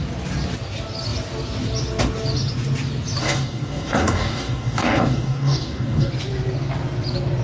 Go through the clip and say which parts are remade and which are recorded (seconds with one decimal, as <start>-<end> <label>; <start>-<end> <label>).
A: 0.0-3.2 recorded; 3.2-6.1 remade; 6.1-7.4 recorded